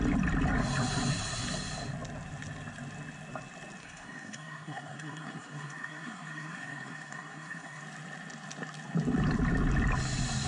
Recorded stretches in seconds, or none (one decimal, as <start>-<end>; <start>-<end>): 0.0-3.8; 7.8-10.5